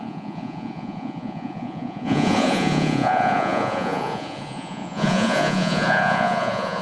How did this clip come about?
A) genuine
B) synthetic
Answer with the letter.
B